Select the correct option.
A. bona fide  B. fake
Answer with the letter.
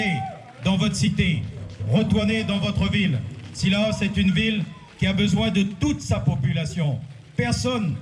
B